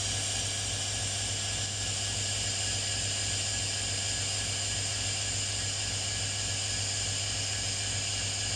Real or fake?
real